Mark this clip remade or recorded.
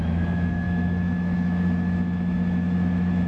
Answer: remade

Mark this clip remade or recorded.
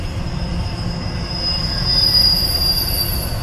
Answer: recorded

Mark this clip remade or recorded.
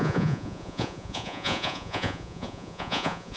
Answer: remade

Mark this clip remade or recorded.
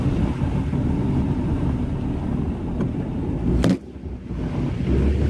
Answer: recorded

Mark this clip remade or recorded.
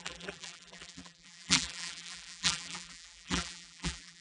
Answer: remade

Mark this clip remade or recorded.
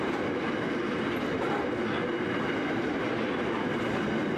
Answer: remade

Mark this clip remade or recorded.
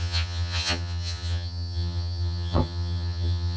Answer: remade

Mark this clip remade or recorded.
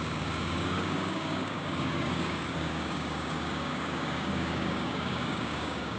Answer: remade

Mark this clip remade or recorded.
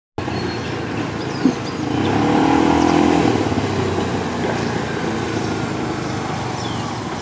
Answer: recorded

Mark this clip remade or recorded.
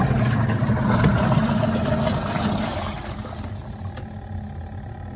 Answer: recorded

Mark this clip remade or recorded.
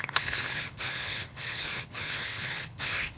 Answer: remade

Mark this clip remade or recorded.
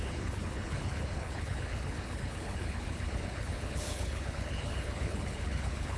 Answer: remade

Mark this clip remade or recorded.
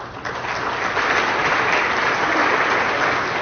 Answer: recorded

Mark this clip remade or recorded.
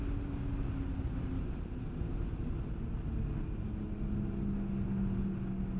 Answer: recorded